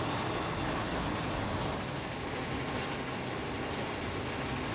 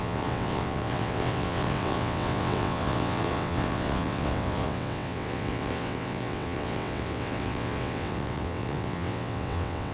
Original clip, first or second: first